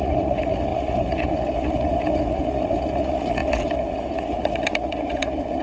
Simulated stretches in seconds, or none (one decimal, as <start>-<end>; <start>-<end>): 0.0-5.6